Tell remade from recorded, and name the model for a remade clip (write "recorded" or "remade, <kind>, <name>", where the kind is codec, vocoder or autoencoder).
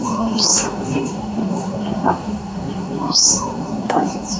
remade, codec, SNAC